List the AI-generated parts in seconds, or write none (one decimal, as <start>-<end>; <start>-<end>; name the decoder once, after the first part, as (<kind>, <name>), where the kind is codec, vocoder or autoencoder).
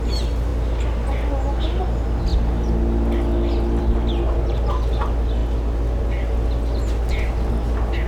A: none